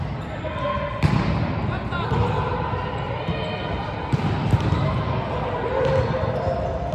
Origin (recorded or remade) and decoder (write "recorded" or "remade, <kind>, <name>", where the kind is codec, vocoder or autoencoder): recorded